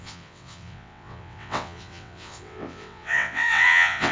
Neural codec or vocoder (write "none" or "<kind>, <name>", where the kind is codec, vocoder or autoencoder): vocoder, WaveNeXt